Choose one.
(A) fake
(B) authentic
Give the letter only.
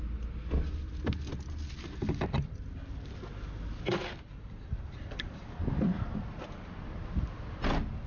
B